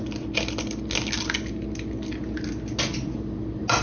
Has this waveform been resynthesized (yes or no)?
no